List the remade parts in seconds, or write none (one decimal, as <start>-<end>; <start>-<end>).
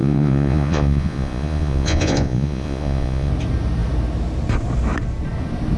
0.0-3.3